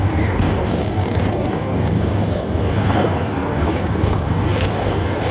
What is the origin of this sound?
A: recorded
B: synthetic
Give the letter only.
B